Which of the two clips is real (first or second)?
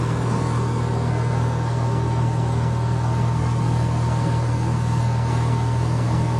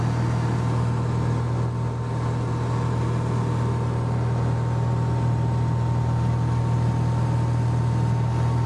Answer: second